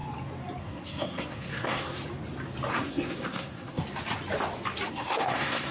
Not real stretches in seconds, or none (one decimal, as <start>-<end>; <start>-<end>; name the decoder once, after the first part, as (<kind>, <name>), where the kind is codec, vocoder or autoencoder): 0.6-2.0 (codec, SNAC); 2.7-3.8; 4.9-5.7